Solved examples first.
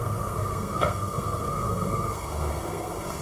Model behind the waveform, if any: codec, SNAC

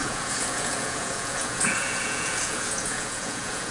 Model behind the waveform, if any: vocoder, Vocos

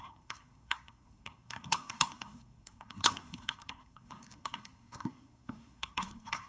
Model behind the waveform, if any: codec, SNAC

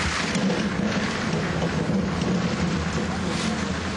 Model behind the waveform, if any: none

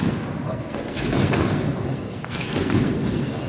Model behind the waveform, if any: codec, SNAC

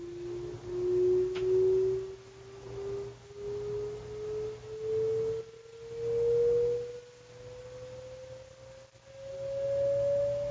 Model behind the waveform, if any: none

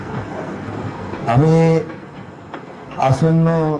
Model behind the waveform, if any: codec, SNAC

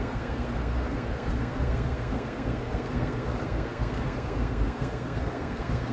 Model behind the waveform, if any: codec, SNAC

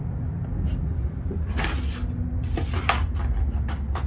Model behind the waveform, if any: none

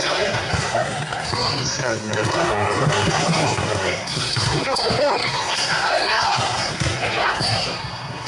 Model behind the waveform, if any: codec, SNAC